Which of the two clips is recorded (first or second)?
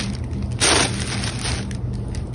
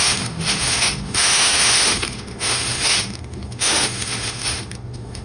first